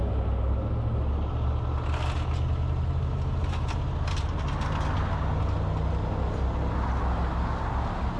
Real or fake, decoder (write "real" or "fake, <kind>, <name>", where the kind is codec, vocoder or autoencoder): real